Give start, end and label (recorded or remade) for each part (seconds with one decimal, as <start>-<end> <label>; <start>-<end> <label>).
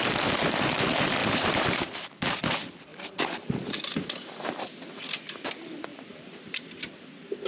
0.0-1.2 recorded; 1.2-2.4 remade; 2.4-2.9 recorded; 2.9-3.9 remade; 3.9-5.9 recorded; 5.9-6.8 remade; 6.8-7.5 recorded